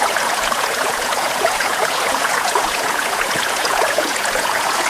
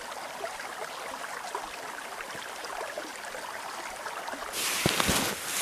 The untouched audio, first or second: second